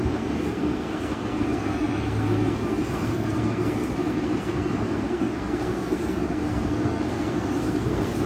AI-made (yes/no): yes